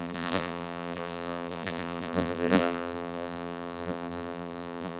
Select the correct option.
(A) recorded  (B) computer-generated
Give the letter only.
B